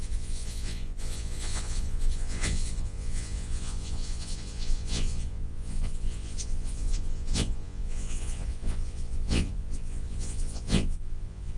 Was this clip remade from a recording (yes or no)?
yes